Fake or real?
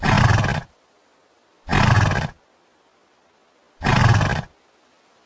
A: real